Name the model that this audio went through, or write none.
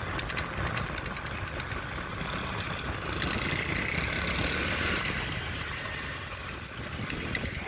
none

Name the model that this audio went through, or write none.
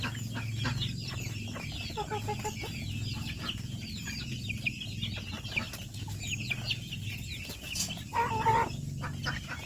none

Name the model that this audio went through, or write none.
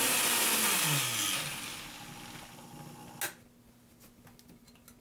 none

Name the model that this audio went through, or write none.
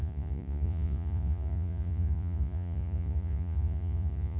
vocoder, Vocos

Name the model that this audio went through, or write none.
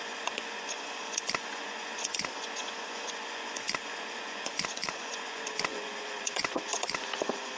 vocoder, Vocos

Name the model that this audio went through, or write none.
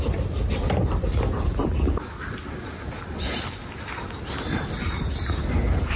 none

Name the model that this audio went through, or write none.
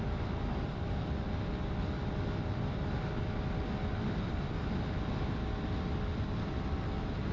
none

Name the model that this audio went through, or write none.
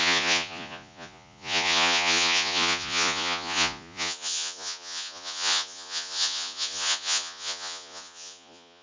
vocoder, Vocos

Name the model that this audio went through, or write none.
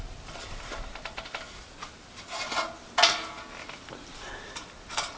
none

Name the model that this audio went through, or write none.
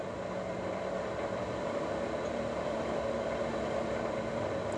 vocoder, BigVGAN v2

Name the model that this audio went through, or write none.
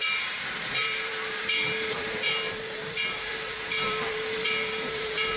vocoder, BigVGAN v2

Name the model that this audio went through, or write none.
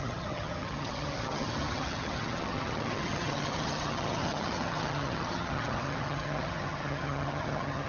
vocoder, HiFi-GAN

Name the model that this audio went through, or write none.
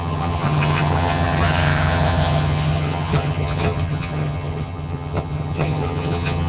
vocoder, HiFi-GAN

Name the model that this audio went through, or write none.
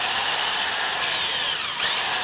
none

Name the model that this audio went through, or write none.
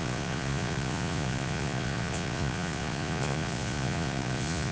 vocoder, Vocos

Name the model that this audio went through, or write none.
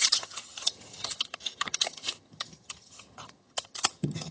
vocoder, HiFi-GAN